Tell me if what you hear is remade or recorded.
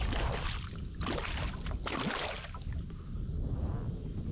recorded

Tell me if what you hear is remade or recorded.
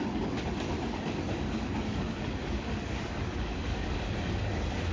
remade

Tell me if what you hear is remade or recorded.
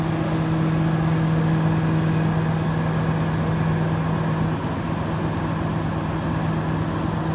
recorded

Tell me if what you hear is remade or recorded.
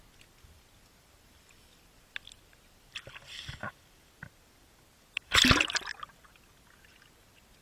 recorded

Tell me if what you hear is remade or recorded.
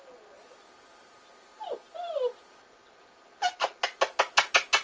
recorded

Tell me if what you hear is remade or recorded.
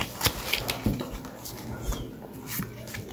recorded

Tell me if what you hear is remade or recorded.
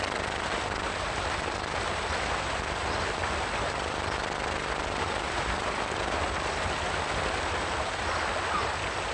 recorded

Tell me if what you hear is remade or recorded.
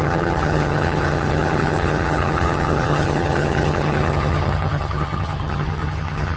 remade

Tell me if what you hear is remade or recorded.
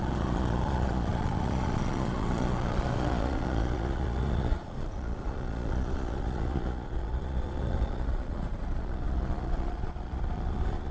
remade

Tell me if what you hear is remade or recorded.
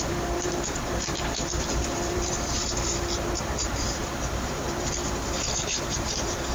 remade